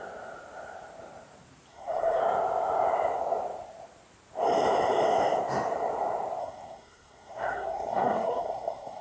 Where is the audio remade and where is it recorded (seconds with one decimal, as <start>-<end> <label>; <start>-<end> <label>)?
0.0-1.7 recorded; 1.7-2.2 remade; 2.2-6.4 recorded; 6.4-9.0 remade